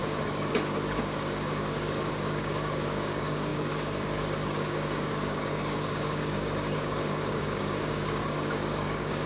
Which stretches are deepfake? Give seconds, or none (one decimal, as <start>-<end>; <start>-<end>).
0.0-9.3